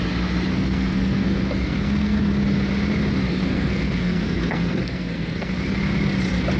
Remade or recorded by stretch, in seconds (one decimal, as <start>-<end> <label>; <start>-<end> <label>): 0.0-0.5 recorded; 0.5-2.2 remade; 2.2-3.3 recorded; 3.3-5.5 remade; 5.5-6.6 recorded